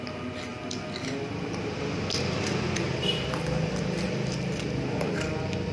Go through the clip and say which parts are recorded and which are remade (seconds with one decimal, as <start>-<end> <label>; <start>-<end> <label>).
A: 0.0-5.7 recorded